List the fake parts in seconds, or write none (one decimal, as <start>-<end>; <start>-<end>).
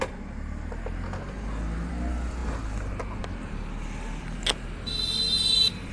none